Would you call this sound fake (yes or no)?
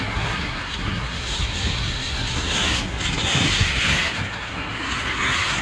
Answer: yes